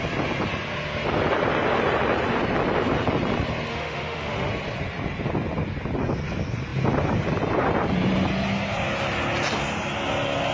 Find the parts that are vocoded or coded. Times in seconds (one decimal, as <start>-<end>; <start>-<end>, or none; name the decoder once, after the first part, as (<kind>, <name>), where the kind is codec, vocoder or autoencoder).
3.7-4.5 (autoencoder, DAC-VAE)